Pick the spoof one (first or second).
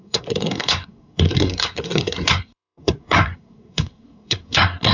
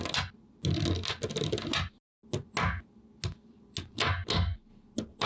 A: first